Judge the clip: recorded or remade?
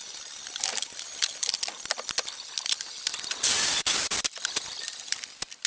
recorded